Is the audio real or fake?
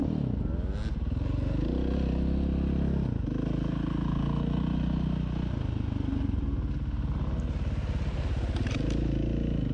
real